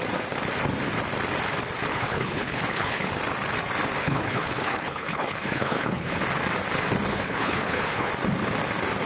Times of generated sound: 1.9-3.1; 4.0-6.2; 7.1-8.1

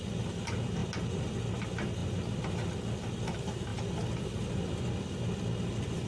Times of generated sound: none